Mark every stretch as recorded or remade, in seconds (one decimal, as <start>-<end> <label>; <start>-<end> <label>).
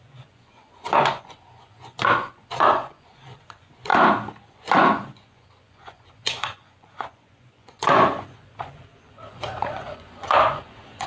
0.0-3.9 remade; 3.9-4.5 recorded; 4.5-11.1 remade